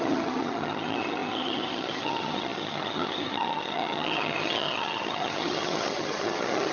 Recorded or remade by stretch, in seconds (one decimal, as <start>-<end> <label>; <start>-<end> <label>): 0.0-6.7 remade

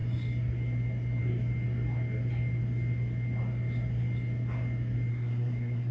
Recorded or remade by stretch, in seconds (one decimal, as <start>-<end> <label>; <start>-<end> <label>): 0.0-5.1 recorded; 5.1-5.9 remade

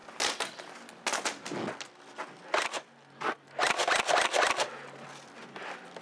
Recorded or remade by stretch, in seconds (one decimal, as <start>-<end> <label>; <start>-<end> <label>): 0.0-6.0 recorded

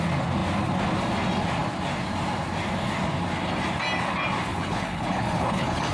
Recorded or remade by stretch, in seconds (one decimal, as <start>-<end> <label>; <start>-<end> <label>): 0.0-4.5 recorded; 4.5-5.9 remade

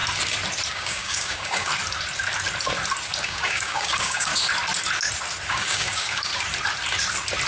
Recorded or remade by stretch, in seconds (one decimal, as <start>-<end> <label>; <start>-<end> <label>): 0.0-0.7 recorded; 0.7-1.7 remade; 1.7-3.2 recorded; 3.2-4.3 remade; 4.3-5.5 recorded; 5.5-6.3 remade; 6.3-7.5 recorded

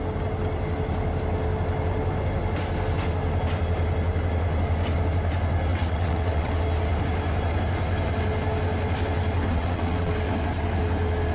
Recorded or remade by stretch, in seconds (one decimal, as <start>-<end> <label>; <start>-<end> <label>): 0.0-5.7 recorded; 5.7-6.5 remade; 6.5-9.5 recorded; 9.5-10.1 remade; 10.1-11.3 recorded

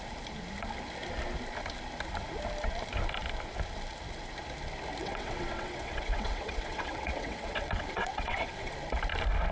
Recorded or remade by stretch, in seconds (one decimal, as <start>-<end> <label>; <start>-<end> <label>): 0.0-5.0 recorded; 5.0-8.7 remade; 8.7-9.5 recorded

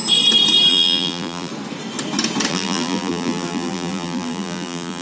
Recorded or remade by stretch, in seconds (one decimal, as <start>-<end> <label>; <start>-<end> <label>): 0.0-0.7 recorded; 0.7-1.5 remade; 1.5-2.5 recorded; 2.5-5.0 remade